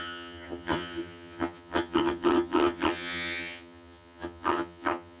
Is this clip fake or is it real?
fake